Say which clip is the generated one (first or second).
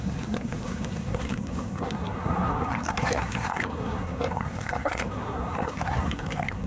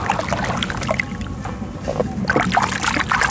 first